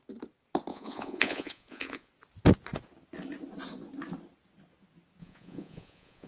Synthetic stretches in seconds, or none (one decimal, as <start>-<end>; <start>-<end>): 0.7-2.1; 5.2-6.3